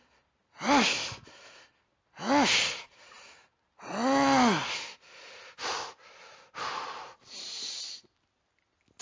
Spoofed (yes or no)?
no